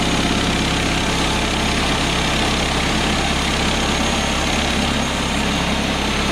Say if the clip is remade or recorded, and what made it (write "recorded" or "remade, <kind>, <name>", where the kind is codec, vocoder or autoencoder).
recorded